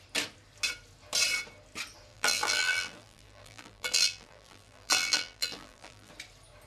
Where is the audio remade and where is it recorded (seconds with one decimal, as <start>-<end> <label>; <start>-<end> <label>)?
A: 0.0-2.1 recorded; 2.1-6.1 remade; 6.1-6.7 recorded